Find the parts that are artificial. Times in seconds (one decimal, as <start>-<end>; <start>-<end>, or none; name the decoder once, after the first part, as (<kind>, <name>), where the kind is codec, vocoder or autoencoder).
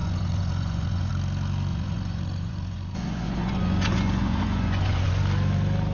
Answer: 0.0-1.1 (vocoder, Vocos); 1.7-5.2